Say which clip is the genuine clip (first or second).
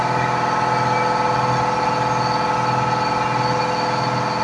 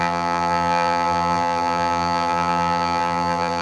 first